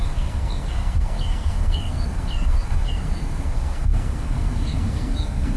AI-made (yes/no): yes